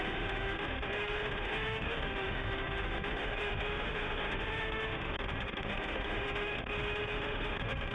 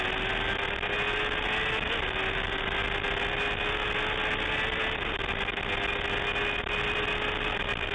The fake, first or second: first